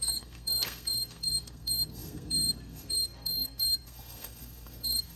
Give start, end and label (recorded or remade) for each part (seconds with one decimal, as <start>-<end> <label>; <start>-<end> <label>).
0.0-5.2 remade

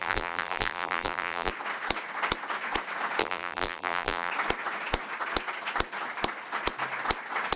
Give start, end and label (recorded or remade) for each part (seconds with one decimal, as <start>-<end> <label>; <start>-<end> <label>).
0.0-1.5 remade; 1.5-3.2 recorded; 3.2-4.3 remade; 4.3-7.6 recorded

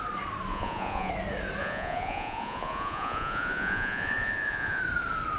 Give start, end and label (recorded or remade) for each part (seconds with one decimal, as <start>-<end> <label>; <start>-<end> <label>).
0.0-0.5 recorded; 0.5-1.1 remade; 1.1-1.6 recorded; 1.6-4.8 remade; 4.8-5.4 recorded

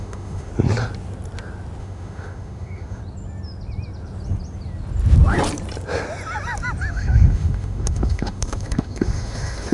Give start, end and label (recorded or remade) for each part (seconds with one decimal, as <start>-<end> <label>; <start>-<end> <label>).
0.0-0.5 remade; 0.5-1.8 recorded; 1.8-3.0 remade; 3.0-6.9 recorded; 6.9-9.7 remade

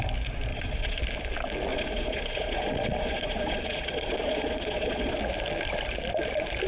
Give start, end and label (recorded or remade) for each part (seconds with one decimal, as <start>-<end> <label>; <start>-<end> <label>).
0.0-0.5 recorded; 0.5-1.0 remade; 1.0-1.7 recorded; 1.7-5.2 remade; 5.2-6.7 recorded

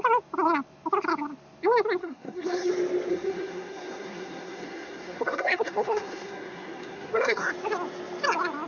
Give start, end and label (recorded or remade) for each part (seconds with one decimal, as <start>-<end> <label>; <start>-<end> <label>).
0.0-2.0 recorded; 2.0-2.7 remade; 2.7-3.1 recorded; 3.1-7.5 remade; 7.5-8.7 recorded